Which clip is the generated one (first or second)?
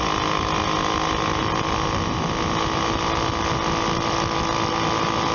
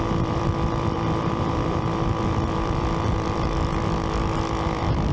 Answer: second